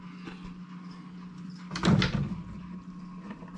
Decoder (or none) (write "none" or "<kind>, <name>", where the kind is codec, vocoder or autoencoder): none